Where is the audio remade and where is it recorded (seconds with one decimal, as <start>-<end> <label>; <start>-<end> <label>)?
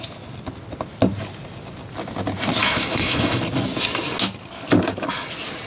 0.0-2.6 recorded; 2.6-3.4 remade; 3.4-5.7 recorded